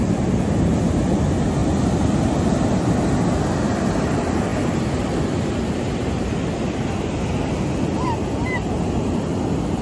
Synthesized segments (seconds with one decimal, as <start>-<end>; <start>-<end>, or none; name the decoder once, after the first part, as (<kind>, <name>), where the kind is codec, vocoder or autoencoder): none